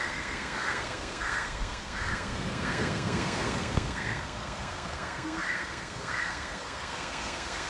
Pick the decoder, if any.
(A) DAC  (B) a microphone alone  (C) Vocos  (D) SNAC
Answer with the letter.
D